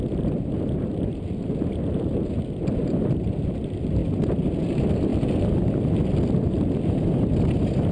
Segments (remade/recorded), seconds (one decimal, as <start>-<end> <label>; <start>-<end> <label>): 0.0-4.0 remade; 4.0-4.6 recorded; 4.6-7.9 remade